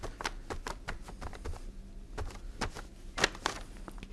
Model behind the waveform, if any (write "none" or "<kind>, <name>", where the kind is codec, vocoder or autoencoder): none